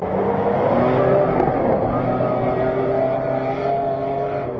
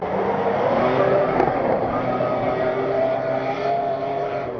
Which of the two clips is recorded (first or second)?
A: first